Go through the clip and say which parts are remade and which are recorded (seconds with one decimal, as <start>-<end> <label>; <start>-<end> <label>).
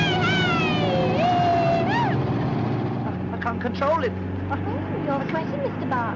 0.0-6.2 recorded